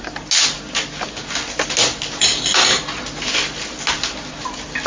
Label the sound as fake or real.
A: real